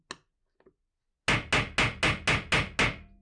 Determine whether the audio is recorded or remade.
recorded